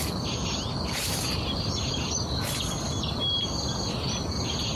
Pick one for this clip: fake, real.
real